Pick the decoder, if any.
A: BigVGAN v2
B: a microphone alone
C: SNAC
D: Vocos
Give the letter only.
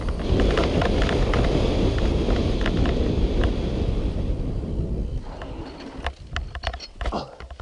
B